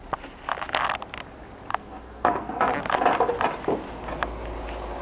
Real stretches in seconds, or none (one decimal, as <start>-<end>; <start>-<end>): 0.0-1.7; 2.6-5.0